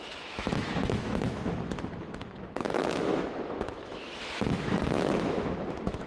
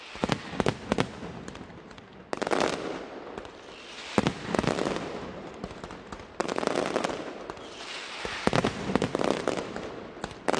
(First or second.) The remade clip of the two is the first